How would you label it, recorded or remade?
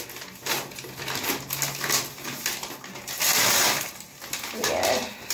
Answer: recorded